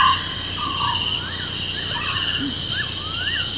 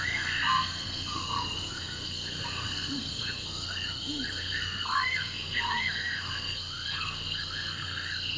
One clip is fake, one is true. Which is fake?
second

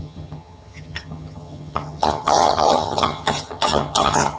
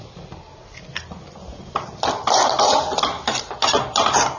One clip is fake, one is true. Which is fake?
first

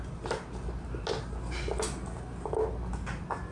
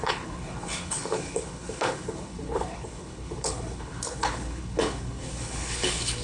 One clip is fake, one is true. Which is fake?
second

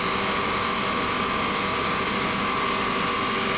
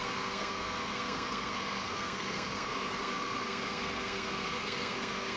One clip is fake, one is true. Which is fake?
second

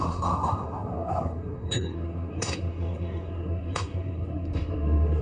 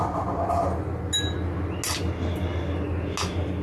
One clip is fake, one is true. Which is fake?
first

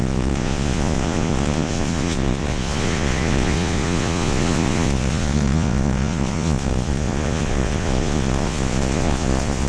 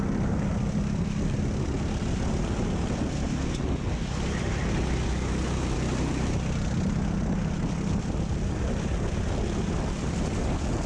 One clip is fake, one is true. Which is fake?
first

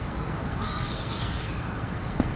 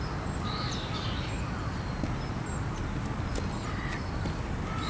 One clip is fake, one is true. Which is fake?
first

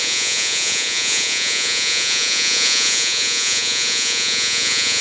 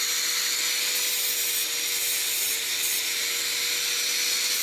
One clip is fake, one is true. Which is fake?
first